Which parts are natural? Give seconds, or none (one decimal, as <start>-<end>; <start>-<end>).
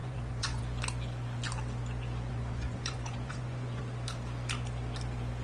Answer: 0.6-2.3; 3.8-5.4